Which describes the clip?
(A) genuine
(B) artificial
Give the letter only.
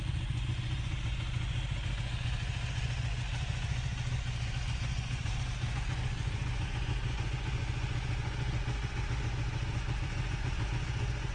B